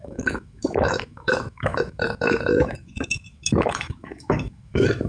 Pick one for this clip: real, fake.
fake